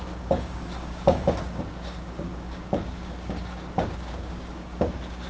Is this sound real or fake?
fake